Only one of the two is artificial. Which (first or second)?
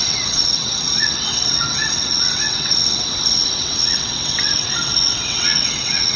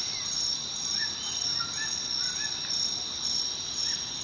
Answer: first